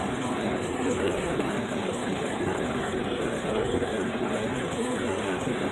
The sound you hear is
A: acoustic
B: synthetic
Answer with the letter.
B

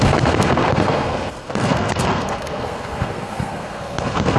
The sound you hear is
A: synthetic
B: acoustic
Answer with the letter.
A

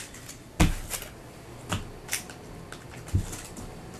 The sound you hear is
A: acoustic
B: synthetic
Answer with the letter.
A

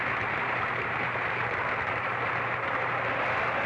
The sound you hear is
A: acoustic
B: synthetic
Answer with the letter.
A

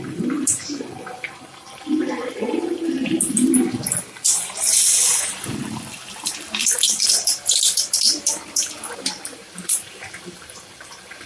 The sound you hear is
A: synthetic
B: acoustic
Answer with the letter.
A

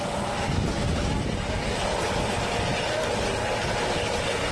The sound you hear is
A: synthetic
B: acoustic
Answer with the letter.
B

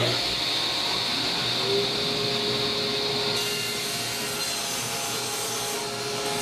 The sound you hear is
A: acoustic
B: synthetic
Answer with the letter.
A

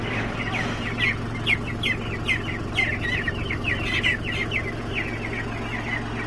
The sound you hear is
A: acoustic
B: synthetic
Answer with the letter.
A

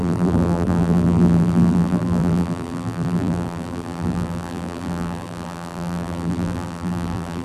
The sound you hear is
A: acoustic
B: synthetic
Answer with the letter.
B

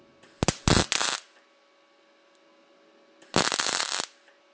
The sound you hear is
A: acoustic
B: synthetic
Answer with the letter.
A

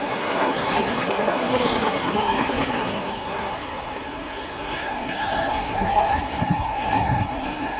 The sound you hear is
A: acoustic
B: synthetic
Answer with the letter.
B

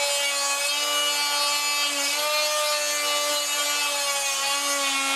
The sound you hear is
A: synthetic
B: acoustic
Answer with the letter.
B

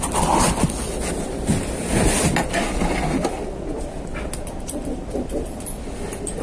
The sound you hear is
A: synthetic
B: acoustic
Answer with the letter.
B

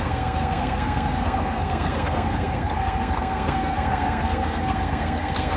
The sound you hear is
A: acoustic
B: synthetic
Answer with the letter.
B